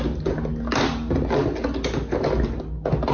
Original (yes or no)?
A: yes